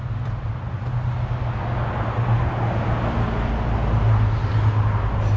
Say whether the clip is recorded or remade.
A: recorded